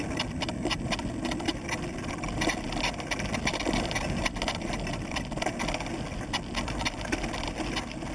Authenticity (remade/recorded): recorded